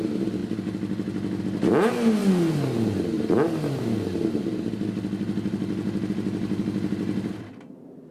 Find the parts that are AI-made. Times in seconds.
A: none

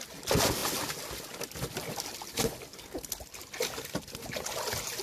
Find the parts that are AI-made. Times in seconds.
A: none

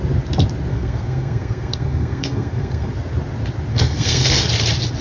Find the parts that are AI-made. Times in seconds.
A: 0.7-2.9 (codec, SNAC); 3.7-4.5

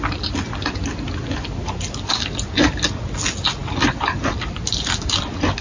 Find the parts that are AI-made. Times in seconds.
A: none